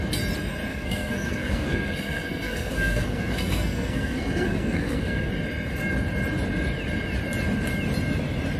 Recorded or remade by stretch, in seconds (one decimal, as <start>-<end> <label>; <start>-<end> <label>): 0.0-0.7 recorded; 0.7-5.3 remade; 5.3-8.6 recorded